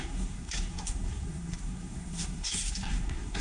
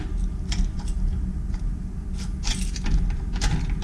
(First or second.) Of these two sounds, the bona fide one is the second